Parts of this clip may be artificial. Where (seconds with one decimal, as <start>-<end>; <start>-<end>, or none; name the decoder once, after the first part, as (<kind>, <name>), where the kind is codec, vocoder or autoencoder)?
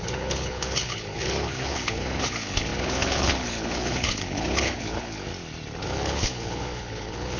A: 0.0-5.3 (codec, HILCodec); 5.8-7.4